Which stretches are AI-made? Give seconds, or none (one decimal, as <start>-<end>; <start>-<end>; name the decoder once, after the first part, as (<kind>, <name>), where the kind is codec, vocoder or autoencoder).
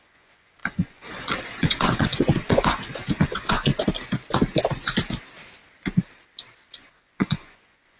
0.0-3.7 (vocoder, Vocos); 6.7-8.0